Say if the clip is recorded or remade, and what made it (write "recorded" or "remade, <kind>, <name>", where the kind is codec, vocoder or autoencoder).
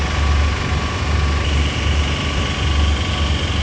recorded